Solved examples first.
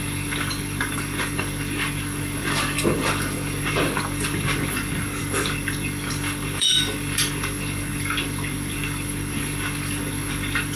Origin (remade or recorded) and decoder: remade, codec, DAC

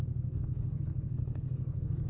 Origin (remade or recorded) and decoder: remade, codec, SNAC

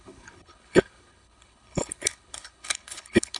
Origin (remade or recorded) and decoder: remade, codec, HILCodec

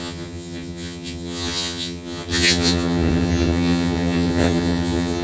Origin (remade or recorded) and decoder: remade, vocoder, HiFi-GAN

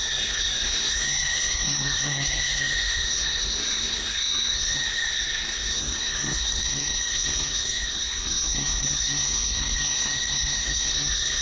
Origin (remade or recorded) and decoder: remade, codec, SNAC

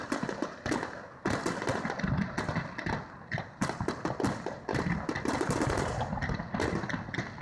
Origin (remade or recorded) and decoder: recorded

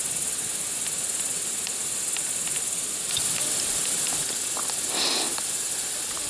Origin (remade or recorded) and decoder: recorded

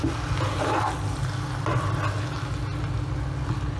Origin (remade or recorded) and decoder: recorded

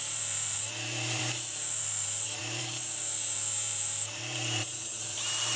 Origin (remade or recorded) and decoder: remade, vocoder, BigVGAN v2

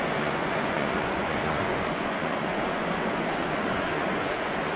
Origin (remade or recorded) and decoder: remade, vocoder, Vocos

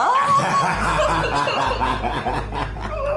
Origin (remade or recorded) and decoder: recorded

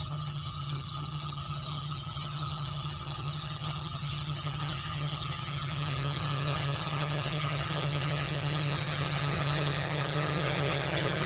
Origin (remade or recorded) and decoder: remade, vocoder, HiFi-GAN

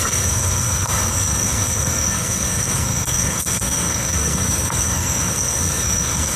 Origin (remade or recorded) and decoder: remade, codec, SNAC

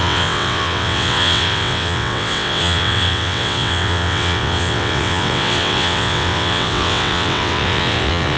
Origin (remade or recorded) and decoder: remade, vocoder, WaveNeXt